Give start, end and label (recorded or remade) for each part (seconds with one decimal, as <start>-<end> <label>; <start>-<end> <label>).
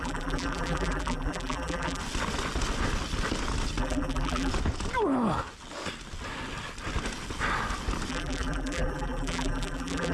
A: 0.0-2.0 remade; 2.0-3.8 recorded; 3.8-4.5 remade; 4.5-8.1 recorded; 8.1-10.1 remade